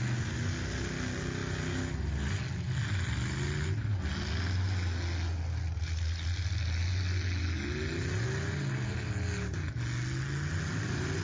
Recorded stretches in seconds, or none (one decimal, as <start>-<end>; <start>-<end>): 0.0-11.2